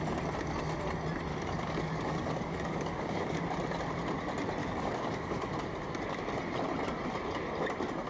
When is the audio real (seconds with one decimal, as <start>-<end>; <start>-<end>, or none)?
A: 0.0-1.3; 3.4-4.6; 5.5-8.1